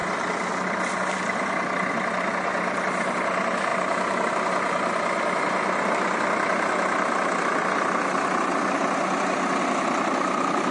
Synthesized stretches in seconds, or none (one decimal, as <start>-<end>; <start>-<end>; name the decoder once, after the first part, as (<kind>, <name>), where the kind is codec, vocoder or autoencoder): none